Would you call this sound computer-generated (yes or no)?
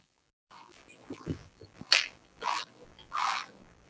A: yes